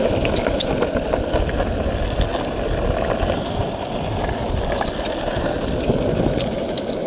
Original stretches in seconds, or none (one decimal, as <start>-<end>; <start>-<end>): 0.0-7.1